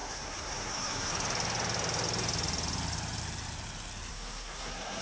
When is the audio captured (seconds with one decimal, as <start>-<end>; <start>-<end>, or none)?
1.1-4.1